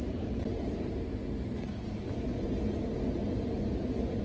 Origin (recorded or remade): recorded